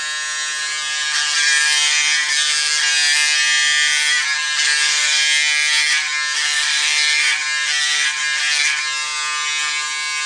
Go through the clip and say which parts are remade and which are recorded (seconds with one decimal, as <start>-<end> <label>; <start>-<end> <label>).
0.0-10.3 recorded